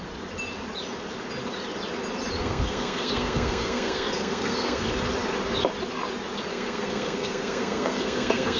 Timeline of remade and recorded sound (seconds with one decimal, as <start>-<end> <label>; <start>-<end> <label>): 0.0-2.4 recorded; 2.4-5.0 remade; 5.0-6.5 recorded; 6.5-8.6 remade